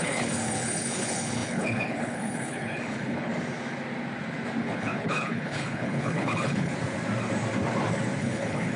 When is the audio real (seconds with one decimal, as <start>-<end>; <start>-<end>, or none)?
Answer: 3.3-4.6; 6.7-8.2